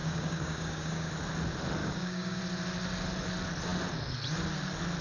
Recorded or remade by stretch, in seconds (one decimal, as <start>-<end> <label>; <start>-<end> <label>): 0.0-1.1 remade; 1.1-1.8 recorded; 1.8-2.4 remade; 2.4-5.0 recorded